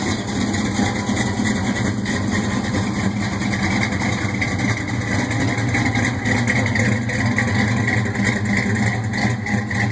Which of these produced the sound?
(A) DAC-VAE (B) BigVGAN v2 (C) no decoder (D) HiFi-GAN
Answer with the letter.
C